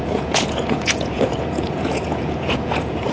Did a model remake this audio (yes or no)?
yes